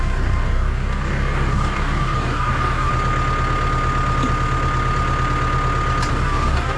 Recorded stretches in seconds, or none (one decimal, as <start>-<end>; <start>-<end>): 2.9-6.1